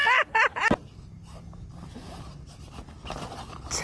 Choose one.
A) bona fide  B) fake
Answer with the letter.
A